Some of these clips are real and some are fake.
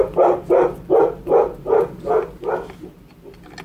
real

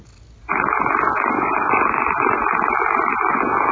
real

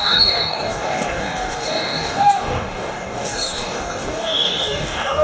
fake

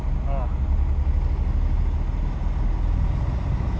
real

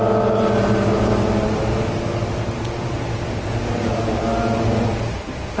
real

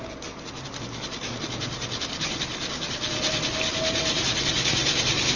real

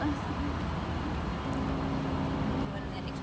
real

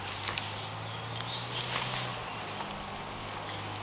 real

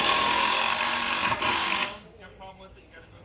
fake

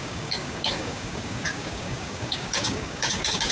fake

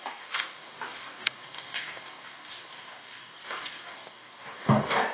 fake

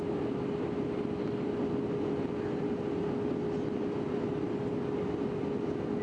real